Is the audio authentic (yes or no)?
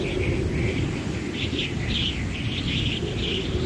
yes